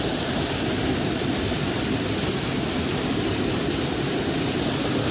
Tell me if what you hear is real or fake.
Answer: real